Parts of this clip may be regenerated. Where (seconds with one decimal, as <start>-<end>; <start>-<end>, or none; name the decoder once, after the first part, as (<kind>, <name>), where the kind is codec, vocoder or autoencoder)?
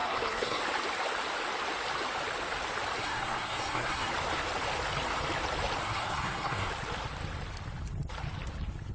0.0-0.6 (codec, SNAC); 3.0-4.1; 5.8-6.7